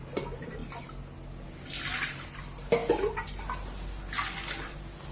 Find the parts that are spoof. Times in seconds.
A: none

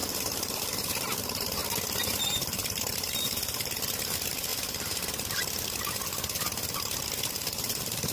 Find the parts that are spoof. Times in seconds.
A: 0.0-1.6 (vocoder, BigVGAN v2); 2.2-8.1

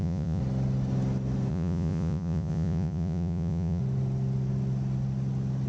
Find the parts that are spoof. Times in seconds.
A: 0.0-0.4 (vocoder, Vocos); 1.5-3.8

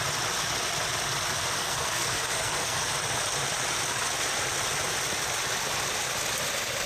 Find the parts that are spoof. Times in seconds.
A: 1.6-2.8 (codec, SNAC)

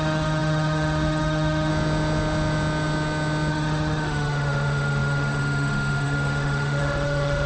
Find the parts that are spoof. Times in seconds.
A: 0.0-1.7 (autoencoder, DAC-VAE); 3.5-7.5

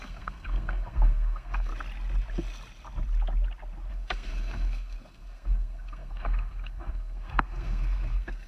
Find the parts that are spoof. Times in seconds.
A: 0.0-1.7 (codec, SNAC); 3.9-8.5

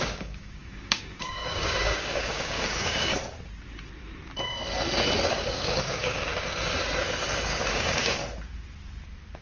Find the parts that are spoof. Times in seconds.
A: 0.0-3.1 (codec, DAC); 5.3-6.3; 7.7-8.2

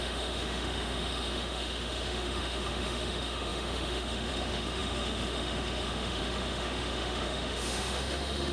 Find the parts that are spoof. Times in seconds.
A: 0.0-8.5 (autoencoder, DAC-VAE)